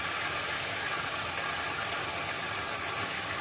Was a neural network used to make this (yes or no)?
no